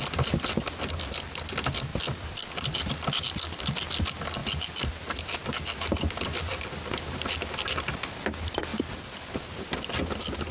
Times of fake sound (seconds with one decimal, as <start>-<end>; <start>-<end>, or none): 1.9-3.2; 4.4-6.6; 8.7-9.7

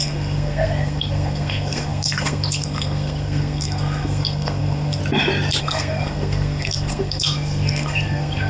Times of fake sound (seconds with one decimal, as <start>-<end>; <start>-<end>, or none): 0.0-5.0; 5.6-8.5

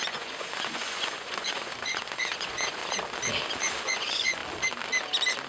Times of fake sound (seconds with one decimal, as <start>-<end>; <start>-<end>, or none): 0.0-2.8; 3.8-4.4

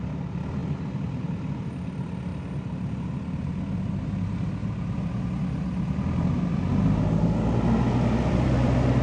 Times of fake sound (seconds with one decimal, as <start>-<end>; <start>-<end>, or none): 0.0-2.3; 3.9-4.6; 7.9-9.0